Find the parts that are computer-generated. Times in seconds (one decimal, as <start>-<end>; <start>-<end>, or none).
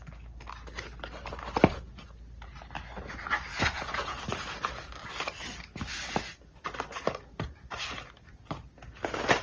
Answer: 3.5-4.2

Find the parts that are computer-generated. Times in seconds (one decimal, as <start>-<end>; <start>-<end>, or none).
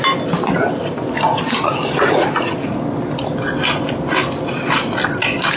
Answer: 1.7-2.8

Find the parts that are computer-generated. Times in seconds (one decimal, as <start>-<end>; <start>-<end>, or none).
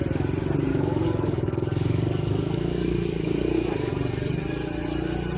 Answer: 0.7-3.9